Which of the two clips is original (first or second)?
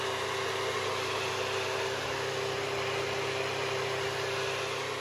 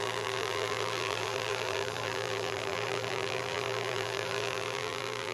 first